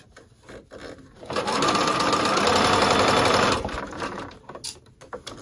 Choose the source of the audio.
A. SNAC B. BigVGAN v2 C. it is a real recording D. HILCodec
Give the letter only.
C